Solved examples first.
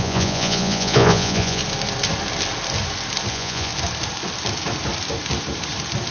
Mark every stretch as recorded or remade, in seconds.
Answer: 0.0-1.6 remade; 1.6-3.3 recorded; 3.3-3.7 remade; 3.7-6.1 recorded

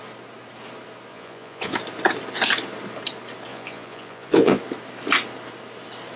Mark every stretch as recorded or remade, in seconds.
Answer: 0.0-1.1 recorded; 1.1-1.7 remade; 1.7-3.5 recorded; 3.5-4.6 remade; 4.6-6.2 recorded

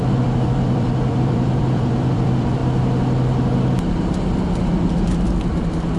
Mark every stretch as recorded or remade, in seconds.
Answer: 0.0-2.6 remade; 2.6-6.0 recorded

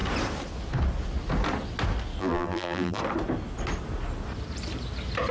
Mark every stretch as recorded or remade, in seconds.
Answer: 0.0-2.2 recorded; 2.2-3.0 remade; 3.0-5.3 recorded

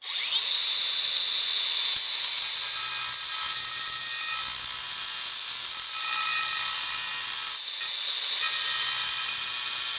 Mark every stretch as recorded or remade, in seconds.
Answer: 0.0-10.0 recorded